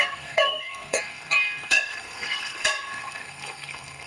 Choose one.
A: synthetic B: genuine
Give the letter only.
A